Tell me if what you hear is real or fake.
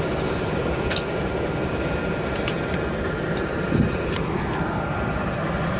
real